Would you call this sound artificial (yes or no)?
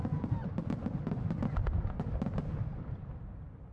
no